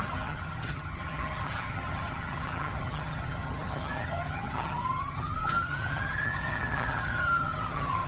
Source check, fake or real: fake